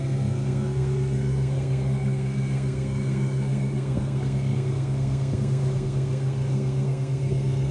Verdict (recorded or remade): remade